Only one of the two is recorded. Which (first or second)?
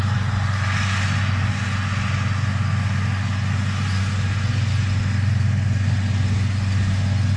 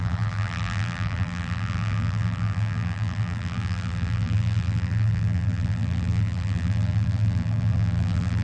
first